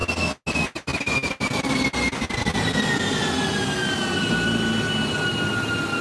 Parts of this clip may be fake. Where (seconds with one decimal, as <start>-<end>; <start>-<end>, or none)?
none